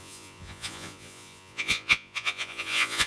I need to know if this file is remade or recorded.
remade